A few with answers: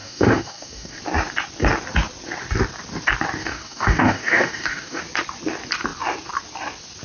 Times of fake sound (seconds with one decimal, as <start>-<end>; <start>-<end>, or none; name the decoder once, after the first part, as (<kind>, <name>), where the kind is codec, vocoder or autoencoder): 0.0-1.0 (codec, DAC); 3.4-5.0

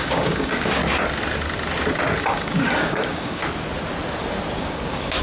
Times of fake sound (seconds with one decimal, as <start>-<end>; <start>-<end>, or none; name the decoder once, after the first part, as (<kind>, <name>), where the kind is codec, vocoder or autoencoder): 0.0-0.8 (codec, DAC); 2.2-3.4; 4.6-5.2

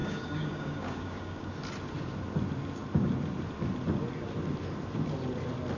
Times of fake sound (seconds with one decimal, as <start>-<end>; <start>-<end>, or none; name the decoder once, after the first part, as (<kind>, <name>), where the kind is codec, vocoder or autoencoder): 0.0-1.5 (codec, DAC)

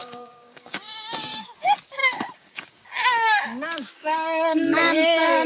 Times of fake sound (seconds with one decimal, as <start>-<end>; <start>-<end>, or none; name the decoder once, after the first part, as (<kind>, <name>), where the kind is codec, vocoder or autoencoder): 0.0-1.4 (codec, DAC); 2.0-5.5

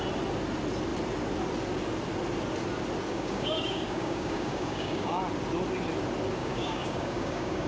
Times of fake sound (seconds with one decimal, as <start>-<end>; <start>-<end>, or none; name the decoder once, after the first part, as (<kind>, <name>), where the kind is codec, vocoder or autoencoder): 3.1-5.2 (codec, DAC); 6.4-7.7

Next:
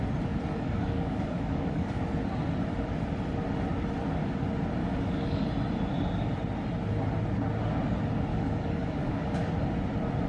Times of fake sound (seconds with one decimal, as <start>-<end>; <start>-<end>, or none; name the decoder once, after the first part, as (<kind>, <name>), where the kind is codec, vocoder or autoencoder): 0.5-2.0 (codec, DAC); 4.8-5.5; 8.3-9.5